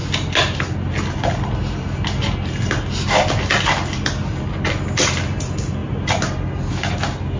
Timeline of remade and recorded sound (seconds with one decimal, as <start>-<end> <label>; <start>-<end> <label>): 0.0-7.4 recorded